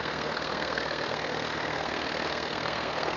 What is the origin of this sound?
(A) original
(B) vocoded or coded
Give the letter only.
B